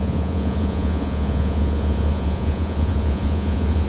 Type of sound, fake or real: fake